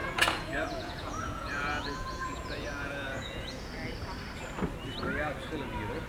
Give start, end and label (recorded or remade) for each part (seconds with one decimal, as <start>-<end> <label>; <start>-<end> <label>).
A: 0.0-3.7 remade; 3.7-6.1 recorded